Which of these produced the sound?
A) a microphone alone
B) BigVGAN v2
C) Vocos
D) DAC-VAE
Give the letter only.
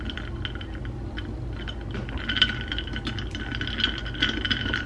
A